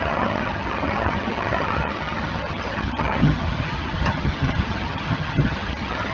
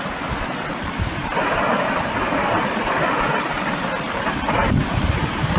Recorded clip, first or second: second